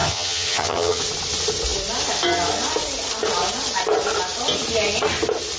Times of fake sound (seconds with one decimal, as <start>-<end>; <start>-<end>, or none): 0.0-1.0